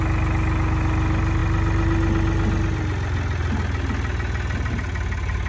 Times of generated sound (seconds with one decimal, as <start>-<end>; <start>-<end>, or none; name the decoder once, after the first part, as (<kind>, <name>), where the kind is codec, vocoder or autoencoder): none